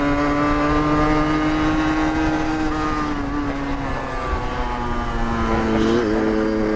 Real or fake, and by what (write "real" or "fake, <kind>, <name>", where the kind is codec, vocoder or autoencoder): real